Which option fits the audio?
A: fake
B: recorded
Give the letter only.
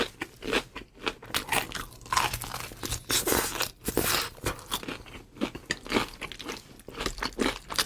B